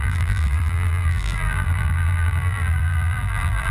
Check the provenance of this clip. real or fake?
fake